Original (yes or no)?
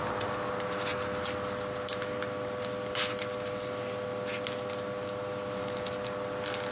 yes